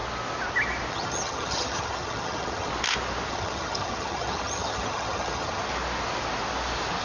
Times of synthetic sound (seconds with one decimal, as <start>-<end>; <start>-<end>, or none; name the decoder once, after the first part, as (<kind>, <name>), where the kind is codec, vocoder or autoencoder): 0.9-2.7 (vocoder, HiFi-GAN); 3.3-5.6